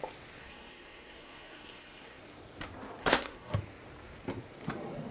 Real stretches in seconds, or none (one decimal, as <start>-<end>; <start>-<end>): 0.0-0.4; 2.2-3.0; 3.6-5.1